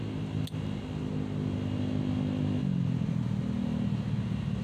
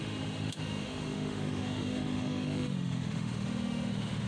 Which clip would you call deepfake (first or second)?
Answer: second